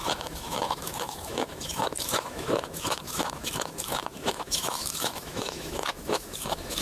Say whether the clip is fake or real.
fake